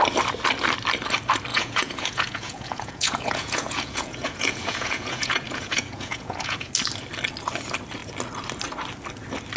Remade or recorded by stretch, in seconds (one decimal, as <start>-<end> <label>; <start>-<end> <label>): 0.0-1.5 recorded; 1.5-6.7 remade; 6.7-9.6 recorded